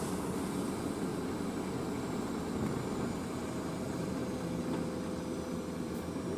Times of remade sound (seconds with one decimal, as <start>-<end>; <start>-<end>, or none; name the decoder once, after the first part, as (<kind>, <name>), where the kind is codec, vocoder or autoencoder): 0.0-1.1 (vocoder, BigVGAN v2); 3.4-4.2; 5.8-6.4